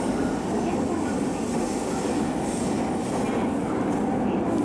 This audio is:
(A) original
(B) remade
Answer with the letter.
A